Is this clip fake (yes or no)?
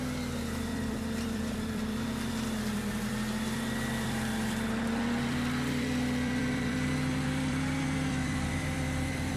yes